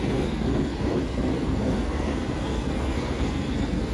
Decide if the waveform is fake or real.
fake